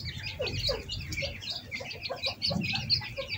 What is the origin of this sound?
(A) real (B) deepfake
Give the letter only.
A